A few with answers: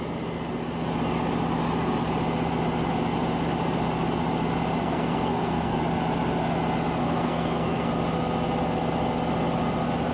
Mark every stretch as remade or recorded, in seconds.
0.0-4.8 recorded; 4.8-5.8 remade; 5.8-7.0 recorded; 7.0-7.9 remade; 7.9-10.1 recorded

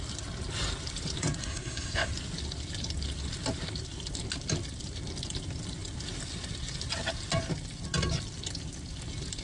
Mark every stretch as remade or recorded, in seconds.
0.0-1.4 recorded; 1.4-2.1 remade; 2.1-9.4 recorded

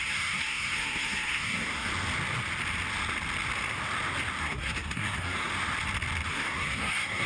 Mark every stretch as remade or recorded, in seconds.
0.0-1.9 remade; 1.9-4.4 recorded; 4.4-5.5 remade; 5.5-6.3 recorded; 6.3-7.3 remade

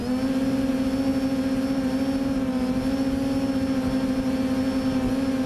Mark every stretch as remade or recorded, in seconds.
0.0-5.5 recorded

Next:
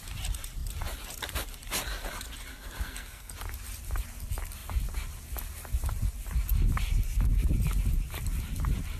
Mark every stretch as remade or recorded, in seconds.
0.0-2.5 recorded; 2.5-3.3 remade; 3.3-9.0 recorded